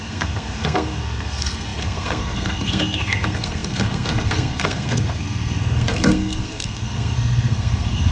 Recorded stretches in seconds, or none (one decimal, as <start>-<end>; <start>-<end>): none